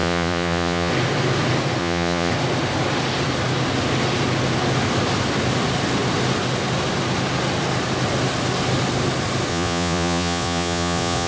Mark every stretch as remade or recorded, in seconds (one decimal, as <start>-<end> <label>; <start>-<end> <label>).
0.0-0.9 remade; 0.9-1.8 recorded; 1.8-2.3 remade; 2.3-9.5 recorded; 9.5-11.3 remade